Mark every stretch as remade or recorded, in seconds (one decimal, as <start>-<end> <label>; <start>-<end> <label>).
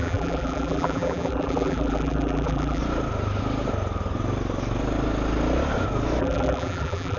0.0-2.8 remade; 2.8-6.2 recorded; 6.2-7.2 remade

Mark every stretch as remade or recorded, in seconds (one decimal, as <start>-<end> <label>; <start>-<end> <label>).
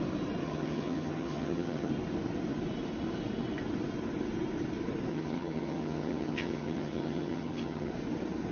0.0-0.4 recorded; 0.4-1.9 remade; 1.9-5.1 recorded; 5.1-7.9 remade; 7.9-8.5 recorded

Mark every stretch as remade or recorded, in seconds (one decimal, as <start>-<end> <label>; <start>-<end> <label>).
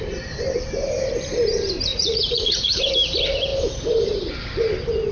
0.0-1.9 recorded; 1.9-2.8 remade; 2.8-5.1 recorded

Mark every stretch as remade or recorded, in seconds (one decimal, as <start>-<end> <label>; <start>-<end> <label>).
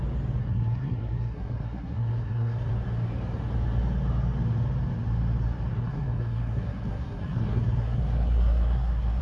0.0-0.4 recorded; 0.4-2.7 remade; 2.7-5.7 recorded; 5.7-9.2 remade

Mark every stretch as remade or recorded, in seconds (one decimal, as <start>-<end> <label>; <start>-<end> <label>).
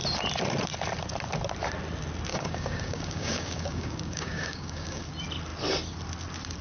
0.0-2.3 recorded; 2.3-5.0 remade; 5.0-6.6 recorded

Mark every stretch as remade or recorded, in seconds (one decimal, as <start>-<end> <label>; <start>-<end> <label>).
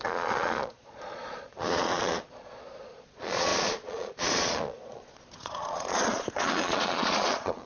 0.0-7.7 remade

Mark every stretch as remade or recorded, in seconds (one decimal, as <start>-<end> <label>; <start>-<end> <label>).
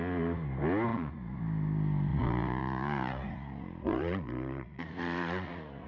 0.0-0.9 recorded; 0.9-1.4 remade; 1.4-2.1 recorded; 2.1-5.9 remade